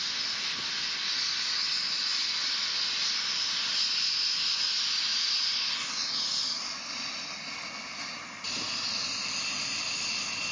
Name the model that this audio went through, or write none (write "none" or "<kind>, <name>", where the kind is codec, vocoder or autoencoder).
none